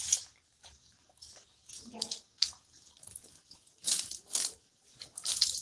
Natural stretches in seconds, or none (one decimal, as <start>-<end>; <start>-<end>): none